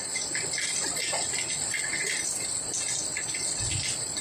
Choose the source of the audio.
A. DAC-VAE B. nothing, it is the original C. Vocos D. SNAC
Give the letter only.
B